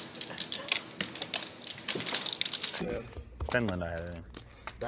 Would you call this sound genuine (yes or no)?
yes